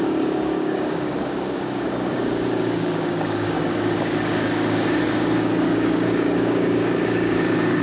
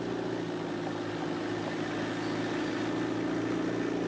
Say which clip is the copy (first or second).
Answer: first